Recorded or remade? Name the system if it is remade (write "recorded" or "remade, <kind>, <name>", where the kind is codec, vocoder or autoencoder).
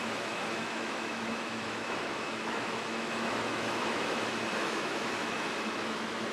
remade, autoencoder, DAC-VAE